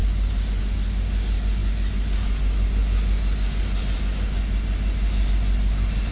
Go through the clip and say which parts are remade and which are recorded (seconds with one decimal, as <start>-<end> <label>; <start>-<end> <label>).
0.0-6.1 recorded